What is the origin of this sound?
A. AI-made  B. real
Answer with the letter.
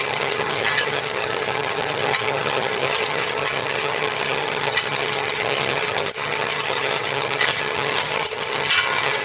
A